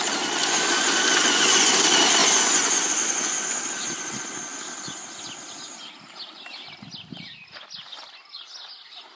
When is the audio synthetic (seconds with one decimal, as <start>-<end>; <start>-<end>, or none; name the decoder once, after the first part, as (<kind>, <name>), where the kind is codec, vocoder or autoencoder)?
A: 0.4-1.7 (vocoder, Vocos); 2.2-3.6